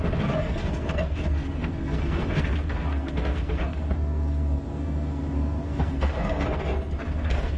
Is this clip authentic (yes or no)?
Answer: no